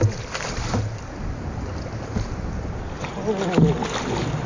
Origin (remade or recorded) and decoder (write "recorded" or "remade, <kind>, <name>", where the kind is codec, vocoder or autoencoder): recorded